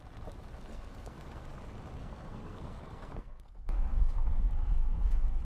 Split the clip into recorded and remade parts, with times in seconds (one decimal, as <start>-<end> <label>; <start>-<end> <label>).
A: 0.0-0.7 recorded; 0.7-1.6 remade; 1.6-2.0 recorded; 2.0-5.4 remade